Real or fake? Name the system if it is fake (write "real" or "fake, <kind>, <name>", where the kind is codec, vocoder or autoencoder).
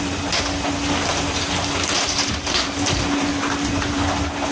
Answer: real